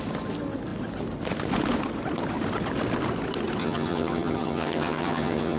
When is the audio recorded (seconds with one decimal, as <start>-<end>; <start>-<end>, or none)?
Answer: 0.0-3.6